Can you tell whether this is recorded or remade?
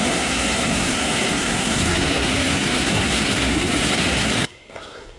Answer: remade